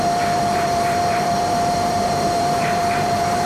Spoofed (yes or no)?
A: yes